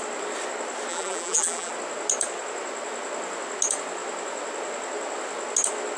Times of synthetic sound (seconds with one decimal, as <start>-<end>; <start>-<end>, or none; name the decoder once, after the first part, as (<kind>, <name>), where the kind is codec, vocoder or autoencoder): 0.9-1.7 (vocoder, BigVGAN v2)